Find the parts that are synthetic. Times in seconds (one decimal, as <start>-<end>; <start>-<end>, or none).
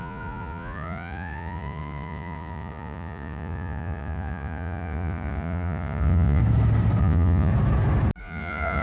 0.0-6.4; 7.0-7.5; 8.2-8.8